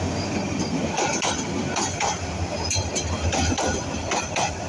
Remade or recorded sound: recorded